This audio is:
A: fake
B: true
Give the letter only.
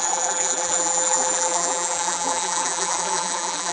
A